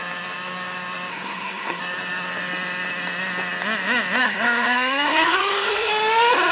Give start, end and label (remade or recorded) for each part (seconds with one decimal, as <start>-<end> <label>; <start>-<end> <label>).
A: 0.0-1.1 recorded; 1.1-1.8 remade; 1.8-4.2 recorded; 4.2-5.9 remade; 5.9-6.5 recorded